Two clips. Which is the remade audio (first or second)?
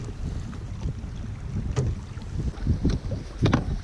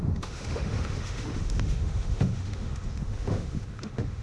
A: second